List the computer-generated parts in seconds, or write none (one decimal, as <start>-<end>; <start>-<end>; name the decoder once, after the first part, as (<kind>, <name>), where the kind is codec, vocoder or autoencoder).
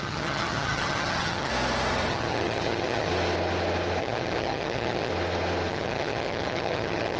0.0-1.5 (vocoder, HiFi-GAN); 2.1-3.1; 4.0-5.1; 5.7-7.2